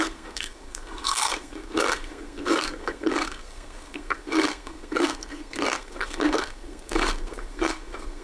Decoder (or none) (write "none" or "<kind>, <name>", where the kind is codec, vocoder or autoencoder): codec, SNAC